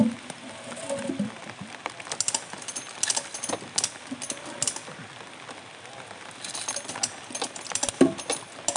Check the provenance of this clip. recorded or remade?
recorded